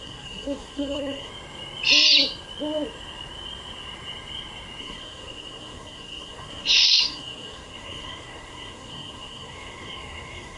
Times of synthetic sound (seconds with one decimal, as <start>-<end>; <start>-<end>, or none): 0.0-1.3; 4.8-10.6